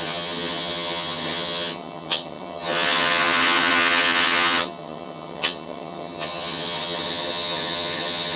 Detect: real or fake fake